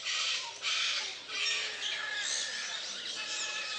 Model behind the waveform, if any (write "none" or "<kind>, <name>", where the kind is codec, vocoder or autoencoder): none